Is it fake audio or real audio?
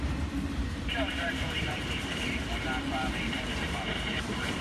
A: fake